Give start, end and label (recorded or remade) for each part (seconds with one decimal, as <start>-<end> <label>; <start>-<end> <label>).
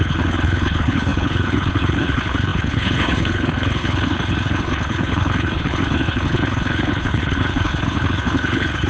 0.0-8.9 remade